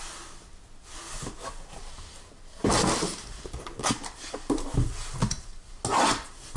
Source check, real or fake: real